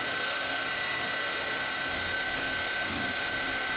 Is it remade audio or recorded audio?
remade